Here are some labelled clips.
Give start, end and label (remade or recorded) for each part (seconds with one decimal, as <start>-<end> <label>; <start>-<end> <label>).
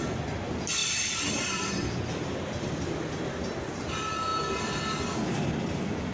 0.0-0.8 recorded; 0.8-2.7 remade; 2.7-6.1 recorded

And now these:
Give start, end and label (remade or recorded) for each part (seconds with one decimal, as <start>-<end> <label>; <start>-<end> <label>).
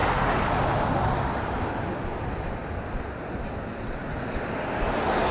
0.0-5.3 recorded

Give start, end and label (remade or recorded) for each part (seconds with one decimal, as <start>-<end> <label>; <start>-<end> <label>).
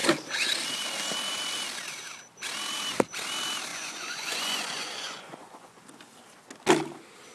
0.0-3.7 recorded; 3.7-5.8 remade; 5.8-7.3 recorded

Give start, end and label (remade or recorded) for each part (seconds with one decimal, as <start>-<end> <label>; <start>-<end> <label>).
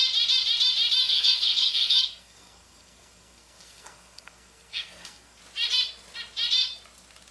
0.0-1.0 recorded; 1.0-5.4 remade; 5.4-7.3 recorded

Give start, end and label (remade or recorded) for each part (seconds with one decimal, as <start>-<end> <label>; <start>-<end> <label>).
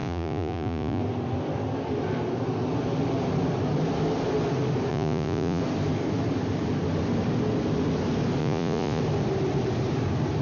0.0-1.0 remade; 1.0-4.9 recorded; 4.9-5.6 remade; 5.6-8.4 recorded; 8.4-9.0 remade; 9.0-10.4 recorded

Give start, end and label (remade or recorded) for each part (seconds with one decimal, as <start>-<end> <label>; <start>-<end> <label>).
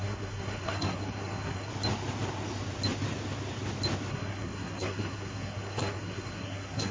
0.0-1.7 remade; 1.7-4.1 recorded; 4.1-6.9 remade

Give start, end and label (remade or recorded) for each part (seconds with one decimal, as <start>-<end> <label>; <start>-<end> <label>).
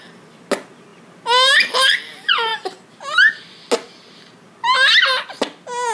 0.0-5.9 recorded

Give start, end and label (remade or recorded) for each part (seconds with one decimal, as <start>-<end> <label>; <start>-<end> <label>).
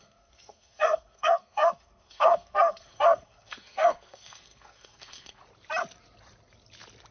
0.0-5.4 remade; 5.4-7.1 recorded